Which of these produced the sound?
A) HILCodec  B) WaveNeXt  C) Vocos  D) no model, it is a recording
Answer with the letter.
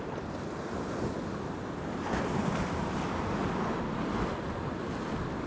D